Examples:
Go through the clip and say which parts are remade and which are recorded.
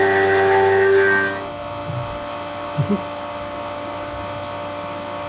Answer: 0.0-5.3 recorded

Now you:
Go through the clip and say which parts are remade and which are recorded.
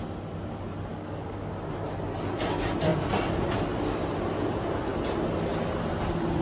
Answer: 0.0-0.9 recorded; 0.9-1.5 remade; 1.5-6.4 recorded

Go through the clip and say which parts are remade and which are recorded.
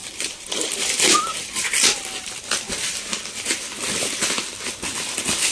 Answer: 0.0-3.3 remade; 3.3-5.5 recorded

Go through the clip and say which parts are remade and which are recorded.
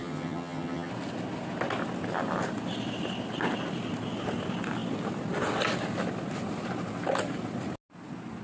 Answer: 0.0-0.9 remade; 0.9-8.4 recorded